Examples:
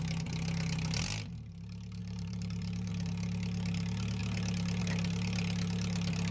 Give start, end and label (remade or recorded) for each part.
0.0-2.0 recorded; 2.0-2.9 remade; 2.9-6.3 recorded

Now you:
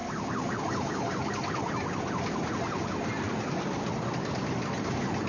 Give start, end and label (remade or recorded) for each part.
0.0-5.3 recorded

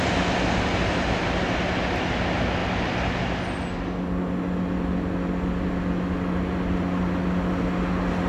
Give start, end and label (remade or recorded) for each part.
0.0-8.3 recorded

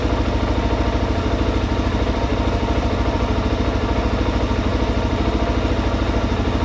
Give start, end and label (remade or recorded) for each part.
0.0-3.5 remade; 3.5-6.6 recorded

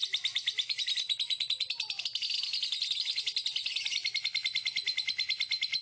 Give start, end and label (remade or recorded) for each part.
0.0-2.0 remade; 2.0-5.8 recorded